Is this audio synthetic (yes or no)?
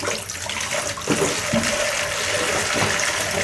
no